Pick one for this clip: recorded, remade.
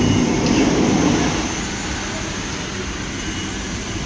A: recorded